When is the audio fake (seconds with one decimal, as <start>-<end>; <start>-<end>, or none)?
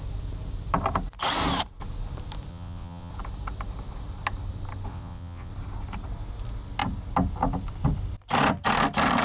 2.5-3.1; 4.9-5.5